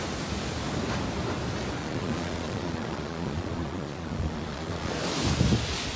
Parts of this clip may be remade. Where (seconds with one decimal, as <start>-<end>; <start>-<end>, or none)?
1.8-4.9